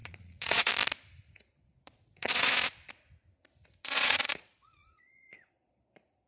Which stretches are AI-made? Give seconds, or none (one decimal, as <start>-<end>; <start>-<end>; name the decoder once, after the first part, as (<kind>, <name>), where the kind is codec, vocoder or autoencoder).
0.0-0.7 (vocoder, Vocos); 1.5-2.9; 3.8-6.3